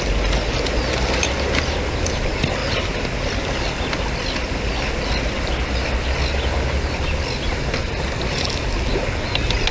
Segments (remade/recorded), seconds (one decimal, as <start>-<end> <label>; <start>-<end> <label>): 0.0-9.7 recorded